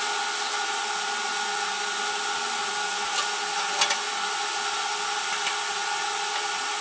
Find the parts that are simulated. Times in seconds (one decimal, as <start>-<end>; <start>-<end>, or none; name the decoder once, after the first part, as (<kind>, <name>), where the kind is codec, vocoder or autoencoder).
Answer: none